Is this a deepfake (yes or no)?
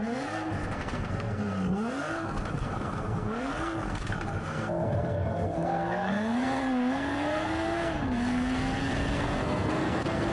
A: yes